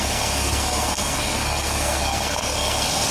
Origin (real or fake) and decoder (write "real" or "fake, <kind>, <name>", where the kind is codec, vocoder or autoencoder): fake, codec, SNAC